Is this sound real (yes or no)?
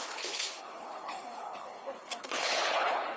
no